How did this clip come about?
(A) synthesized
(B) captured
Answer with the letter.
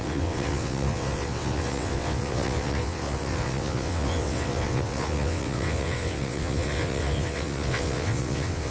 A